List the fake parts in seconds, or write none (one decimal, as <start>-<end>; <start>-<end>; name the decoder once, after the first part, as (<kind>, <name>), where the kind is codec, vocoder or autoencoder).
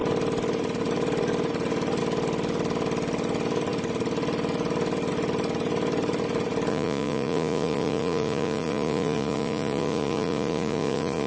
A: 6.7-11.3 (vocoder, Vocos)